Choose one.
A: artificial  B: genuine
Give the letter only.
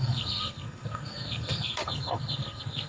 A